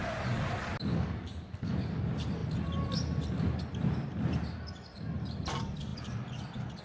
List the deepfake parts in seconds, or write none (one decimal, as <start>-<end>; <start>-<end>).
0.9-2.0